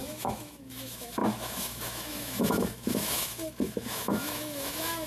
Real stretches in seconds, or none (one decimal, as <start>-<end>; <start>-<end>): none